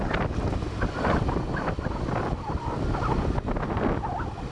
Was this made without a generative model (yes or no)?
yes